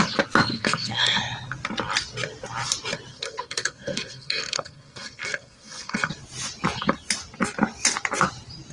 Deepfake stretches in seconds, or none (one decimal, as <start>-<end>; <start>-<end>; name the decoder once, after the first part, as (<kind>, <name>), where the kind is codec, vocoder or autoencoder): 0.5-1.2 (codec, SNAC); 3.1-6.1